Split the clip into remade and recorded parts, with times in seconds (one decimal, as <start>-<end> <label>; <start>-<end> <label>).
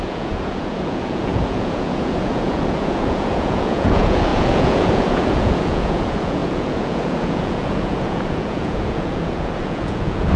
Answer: 0.0-10.4 remade